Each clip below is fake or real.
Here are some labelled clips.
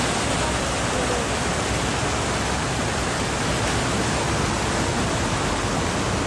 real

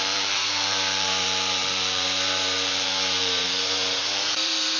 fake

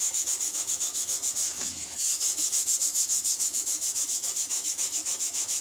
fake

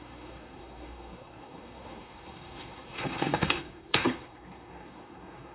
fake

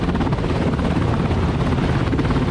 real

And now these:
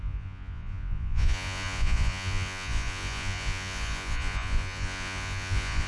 fake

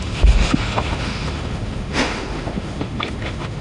fake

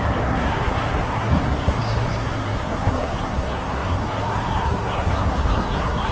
fake